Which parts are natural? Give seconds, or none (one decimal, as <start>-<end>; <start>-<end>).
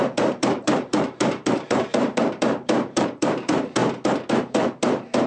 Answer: 3.8-4.3